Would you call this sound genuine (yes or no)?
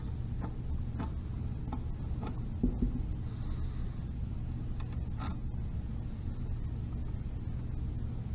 yes